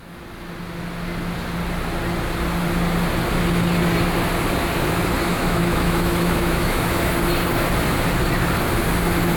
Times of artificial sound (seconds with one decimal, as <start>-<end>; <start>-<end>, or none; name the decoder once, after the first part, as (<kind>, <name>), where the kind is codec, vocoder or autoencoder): 5.3-7.1 (autoencoder, DAC-VAE)